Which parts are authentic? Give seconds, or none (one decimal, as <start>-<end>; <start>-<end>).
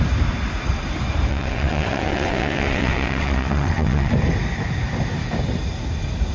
0.0-1.3; 4.1-6.3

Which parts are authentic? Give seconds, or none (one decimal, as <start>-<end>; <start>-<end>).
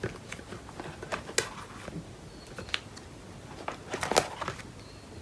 0.0-5.2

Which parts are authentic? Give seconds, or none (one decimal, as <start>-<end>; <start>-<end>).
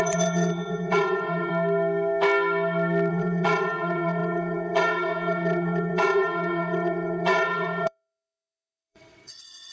1.5-3.1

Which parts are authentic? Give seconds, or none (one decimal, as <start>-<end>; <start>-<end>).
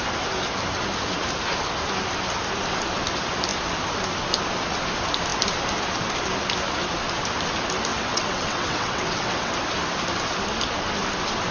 0.0-7.9; 9.5-11.5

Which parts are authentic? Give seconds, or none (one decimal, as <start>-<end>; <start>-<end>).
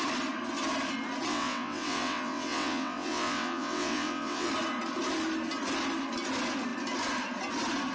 0.0-1.3; 4.5-7.9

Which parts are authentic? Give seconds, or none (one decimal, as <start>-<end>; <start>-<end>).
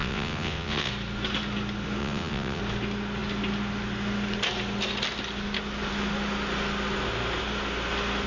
0.9-2.0; 2.6-8.3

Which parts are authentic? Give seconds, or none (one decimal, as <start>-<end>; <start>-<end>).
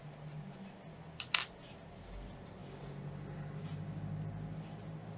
0.0-5.2